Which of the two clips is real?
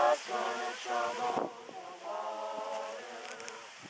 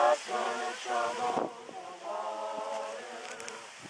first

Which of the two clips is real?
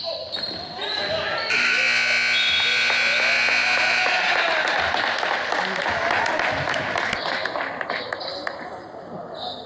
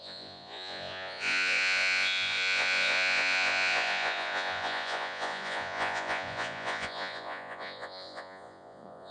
first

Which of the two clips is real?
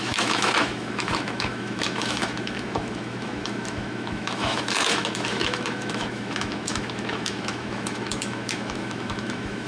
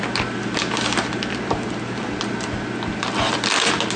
second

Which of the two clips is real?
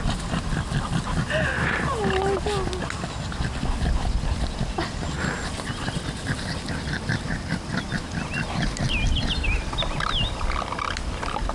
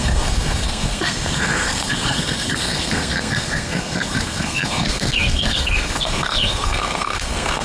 first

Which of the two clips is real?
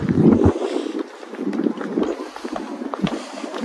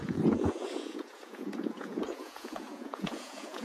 first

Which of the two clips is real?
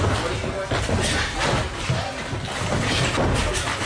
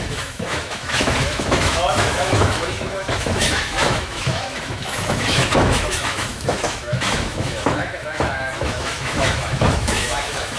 first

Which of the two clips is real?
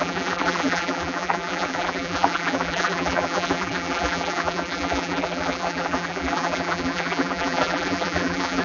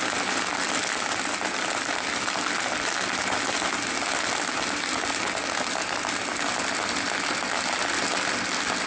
second